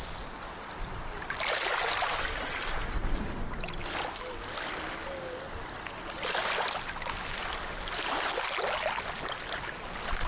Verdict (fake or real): real